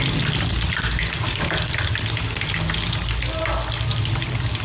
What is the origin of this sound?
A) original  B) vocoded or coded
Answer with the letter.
A